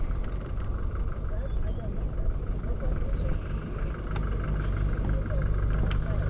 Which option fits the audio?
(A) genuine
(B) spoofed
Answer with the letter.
A